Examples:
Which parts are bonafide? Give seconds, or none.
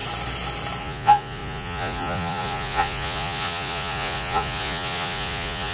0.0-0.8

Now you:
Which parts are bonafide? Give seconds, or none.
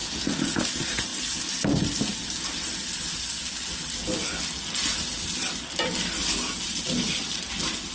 0.6-7.9